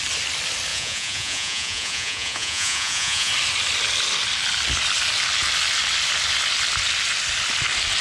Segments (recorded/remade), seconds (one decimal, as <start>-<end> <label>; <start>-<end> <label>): 0.0-0.7 recorded; 0.7-3.3 remade; 3.3-8.0 recorded